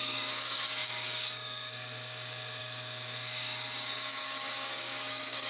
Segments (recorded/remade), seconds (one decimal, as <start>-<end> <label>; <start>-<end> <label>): 0.0-5.5 remade